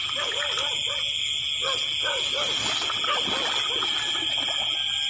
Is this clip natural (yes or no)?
yes